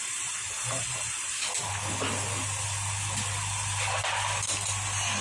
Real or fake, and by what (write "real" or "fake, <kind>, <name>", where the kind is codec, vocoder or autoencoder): real